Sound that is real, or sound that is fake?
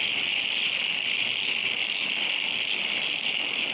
real